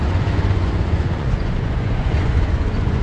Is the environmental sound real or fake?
fake